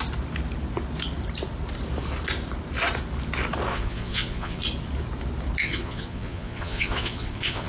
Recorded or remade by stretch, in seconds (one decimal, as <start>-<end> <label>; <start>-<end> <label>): 0.0-3.7 recorded; 3.7-4.6 remade; 4.6-5.6 recorded; 5.6-7.7 remade